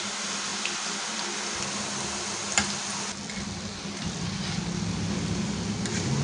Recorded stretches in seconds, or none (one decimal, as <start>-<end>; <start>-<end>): 0.0-6.2